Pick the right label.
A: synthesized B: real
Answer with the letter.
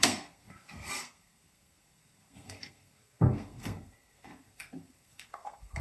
A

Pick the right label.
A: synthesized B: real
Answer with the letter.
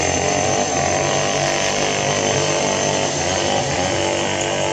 B